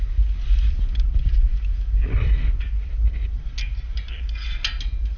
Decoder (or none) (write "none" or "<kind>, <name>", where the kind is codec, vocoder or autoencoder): none